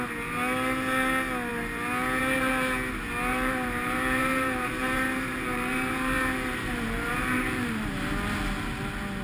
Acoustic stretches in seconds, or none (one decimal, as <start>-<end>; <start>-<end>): 0.0-3.3; 7.9-9.2